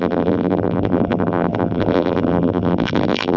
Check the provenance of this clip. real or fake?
fake